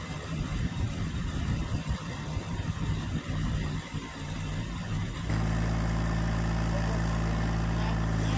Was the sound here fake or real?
real